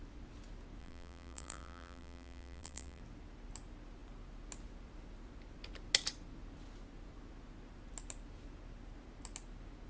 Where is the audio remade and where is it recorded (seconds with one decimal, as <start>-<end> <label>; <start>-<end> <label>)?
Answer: 0.0-0.8 recorded; 0.8-3.0 remade; 3.0-9.9 recorded